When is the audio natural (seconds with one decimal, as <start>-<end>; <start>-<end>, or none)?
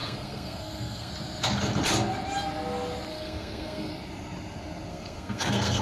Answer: 1.1-3.1; 3.9-4.9